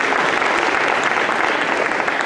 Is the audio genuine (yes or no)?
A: yes